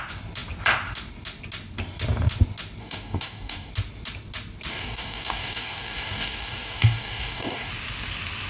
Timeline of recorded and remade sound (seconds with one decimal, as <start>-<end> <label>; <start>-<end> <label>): 0.0-2.8 recorded; 2.8-3.7 remade; 3.7-4.7 recorded; 4.7-7.7 remade; 7.7-8.5 recorded